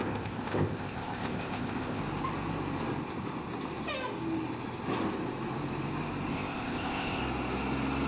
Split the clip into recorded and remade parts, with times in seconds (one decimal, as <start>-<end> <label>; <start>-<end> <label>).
0.0-2.0 remade; 2.0-6.3 recorded; 6.3-7.2 remade; 7.2-8.1 recorded